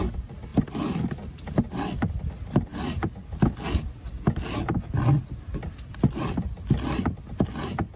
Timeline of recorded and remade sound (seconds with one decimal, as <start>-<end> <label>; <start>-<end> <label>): 0.0-8.0 recorded